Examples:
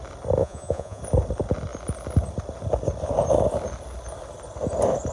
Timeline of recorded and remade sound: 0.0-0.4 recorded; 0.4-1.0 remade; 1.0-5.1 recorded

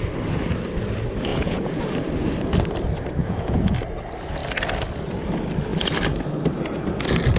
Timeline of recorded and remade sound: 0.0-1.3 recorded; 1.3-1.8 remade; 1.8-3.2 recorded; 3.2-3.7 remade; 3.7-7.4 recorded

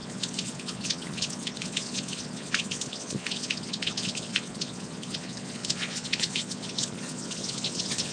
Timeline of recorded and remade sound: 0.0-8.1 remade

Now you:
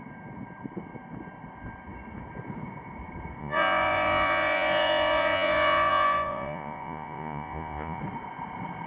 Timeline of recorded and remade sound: 0.0-3.4 recorded; 3.4-8.0 remade; 8.0-8.9 recorded

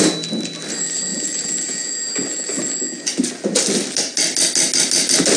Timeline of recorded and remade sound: 0.0-1.1 recorded; 1.1-1.9 remade; 1.9-5.4 recorded

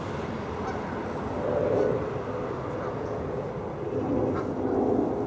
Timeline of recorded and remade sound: 0.0-2.9 recorded; 2.9-3.5 remade; 3.5-5.3 recorded

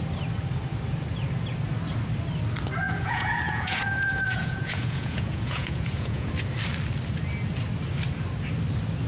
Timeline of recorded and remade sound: 0.0-2.8 recorded; 2.8-6.3 remade; 6.3-9.1 recorded